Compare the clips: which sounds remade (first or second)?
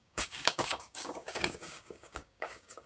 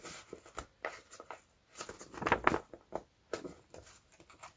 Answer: first